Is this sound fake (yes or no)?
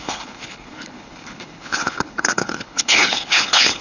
yes